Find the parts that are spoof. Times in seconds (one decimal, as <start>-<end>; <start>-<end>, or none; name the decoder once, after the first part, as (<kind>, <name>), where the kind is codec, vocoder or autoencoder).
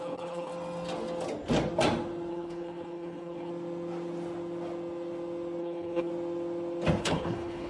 0.0-0.5 (codec, HILCodec); 2.3-3.5; 5.6-6.1; 7.0-7.7